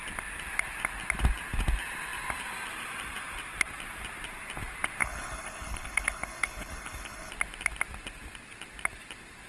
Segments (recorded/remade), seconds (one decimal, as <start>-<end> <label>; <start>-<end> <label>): 0.0-5.0 recorded; 5.0-7.3 remade; 7.3-9.5 recorded